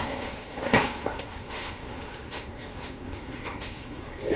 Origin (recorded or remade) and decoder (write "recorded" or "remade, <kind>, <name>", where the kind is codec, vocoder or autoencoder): remade, codec, SNAC